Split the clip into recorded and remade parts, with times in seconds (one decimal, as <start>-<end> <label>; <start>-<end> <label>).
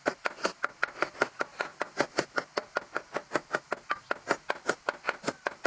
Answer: 0.0-1.7 recorded; 1.7-3.6 remade; 3.6-5.7 recorded